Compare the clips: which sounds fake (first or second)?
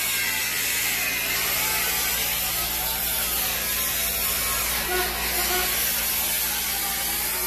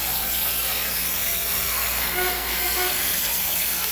second